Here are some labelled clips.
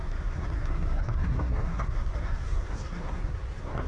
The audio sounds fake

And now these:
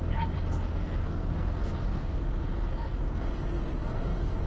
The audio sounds fake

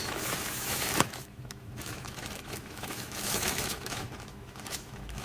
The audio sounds fake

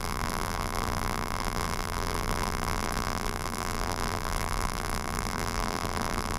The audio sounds fake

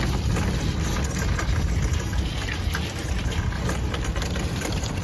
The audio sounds real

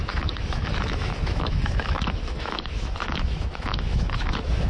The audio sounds fake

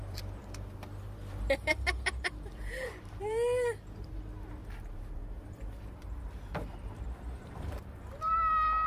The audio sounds fake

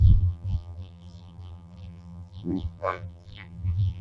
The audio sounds fake